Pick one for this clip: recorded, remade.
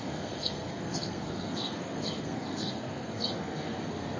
remade